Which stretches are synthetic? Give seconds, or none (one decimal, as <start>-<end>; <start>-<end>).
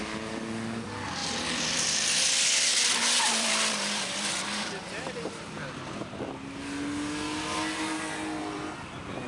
1.2-6.2; 8.4-8.9